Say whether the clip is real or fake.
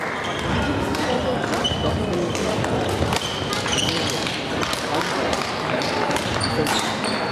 real